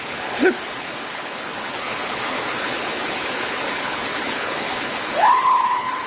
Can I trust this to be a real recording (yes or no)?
no